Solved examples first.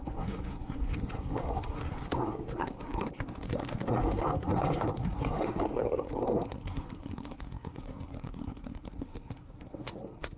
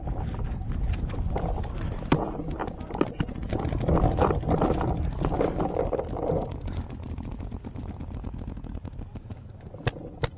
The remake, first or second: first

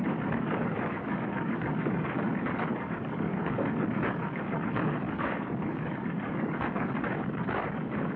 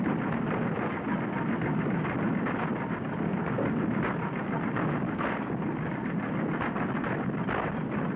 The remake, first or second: first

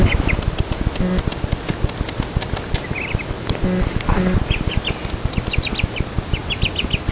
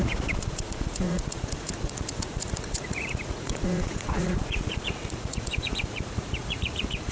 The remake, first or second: second